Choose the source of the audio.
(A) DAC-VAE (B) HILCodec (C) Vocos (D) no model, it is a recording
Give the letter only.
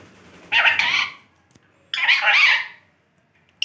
D